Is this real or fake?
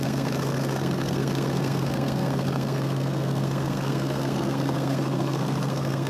fake